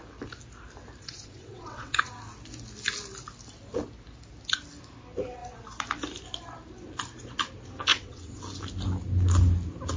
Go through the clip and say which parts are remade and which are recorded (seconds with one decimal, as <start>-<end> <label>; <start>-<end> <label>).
0.0-1.0 recorded; 1.0-2.1 remade; 2.1-7.9 recorded; 7.9-8.4 remade; 8.4-10.0 recorded